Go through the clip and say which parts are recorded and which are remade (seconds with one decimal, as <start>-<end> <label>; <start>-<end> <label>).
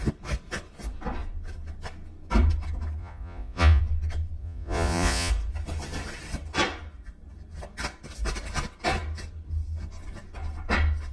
0.0-3.0 recorded; 3.0-3.8 remade; 3.8-4.4 recorded; 4.4-5.3 remade; 5.3-11.1 recorded